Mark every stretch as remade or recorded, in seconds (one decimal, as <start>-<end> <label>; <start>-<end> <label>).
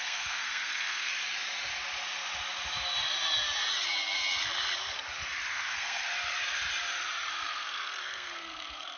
0.0-1.1 remade; 1.1-5.5 recorded; 5.5-6.0 remade; 6.0-7.3 recorded; 7.3-9.0 remade